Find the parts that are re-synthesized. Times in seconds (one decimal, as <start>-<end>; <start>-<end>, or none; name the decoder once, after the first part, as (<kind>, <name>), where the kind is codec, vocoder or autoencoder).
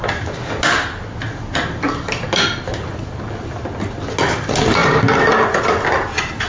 none